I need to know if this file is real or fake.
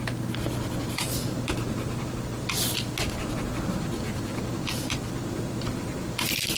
real